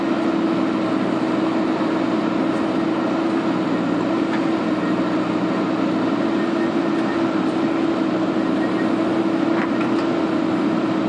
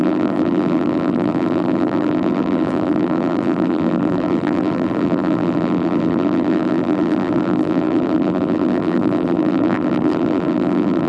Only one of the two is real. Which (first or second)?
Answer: first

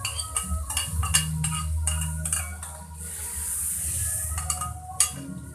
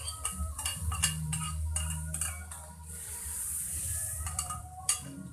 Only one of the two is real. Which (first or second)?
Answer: first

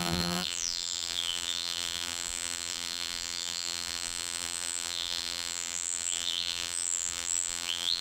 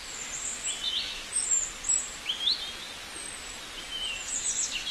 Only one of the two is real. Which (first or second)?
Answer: second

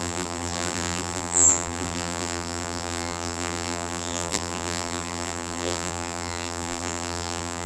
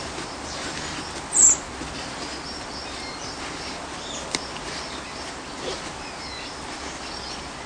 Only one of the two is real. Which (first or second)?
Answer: second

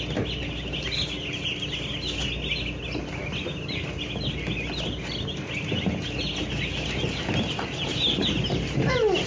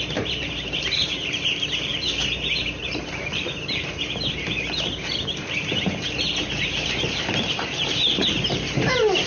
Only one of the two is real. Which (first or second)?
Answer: first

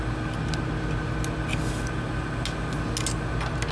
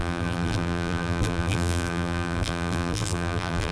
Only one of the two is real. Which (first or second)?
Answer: first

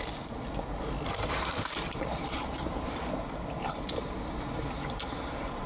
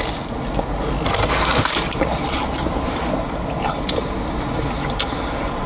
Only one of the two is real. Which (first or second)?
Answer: second